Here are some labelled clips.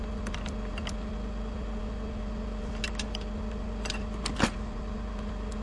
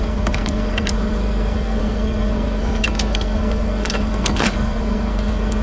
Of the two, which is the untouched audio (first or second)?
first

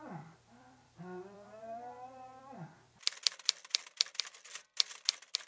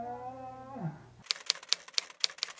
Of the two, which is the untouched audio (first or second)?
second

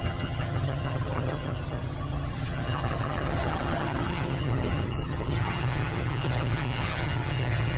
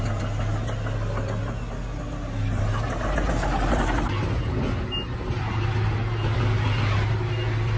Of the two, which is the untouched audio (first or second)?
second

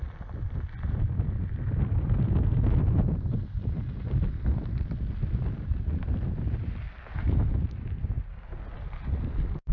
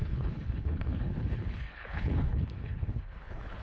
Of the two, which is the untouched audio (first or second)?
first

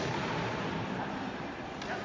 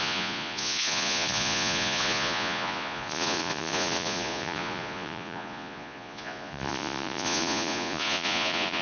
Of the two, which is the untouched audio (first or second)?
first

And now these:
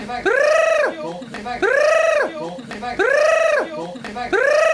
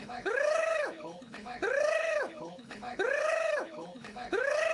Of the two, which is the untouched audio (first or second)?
first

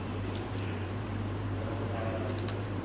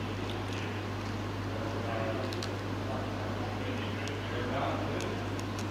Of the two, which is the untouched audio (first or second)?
second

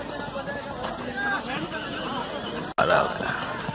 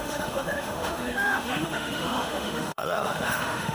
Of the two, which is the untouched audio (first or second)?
first